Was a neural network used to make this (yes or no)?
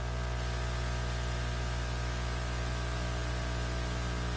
no